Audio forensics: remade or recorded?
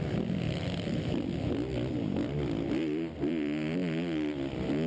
remade